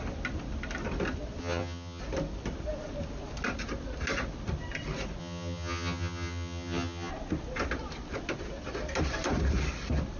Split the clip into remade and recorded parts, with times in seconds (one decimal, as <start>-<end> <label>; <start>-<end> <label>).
0.0-1.4 recorded; 1.4-2.0 remade; 2.0-5.2 recorded; 5.2-7.1 remade; 7.1-10.2 recorded